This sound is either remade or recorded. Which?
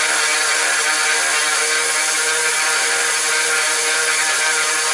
recorded